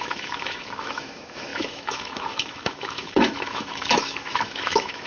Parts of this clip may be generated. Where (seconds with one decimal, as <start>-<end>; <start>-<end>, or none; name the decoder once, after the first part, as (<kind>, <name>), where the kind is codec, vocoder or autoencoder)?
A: 0.0-5.1 (autoencoder, DAC-VAE)